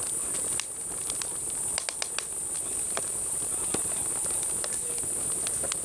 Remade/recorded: recorded